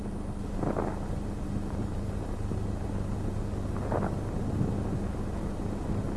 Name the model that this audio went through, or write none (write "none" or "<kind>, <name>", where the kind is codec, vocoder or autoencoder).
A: none